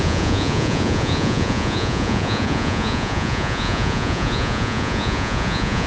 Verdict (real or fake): fake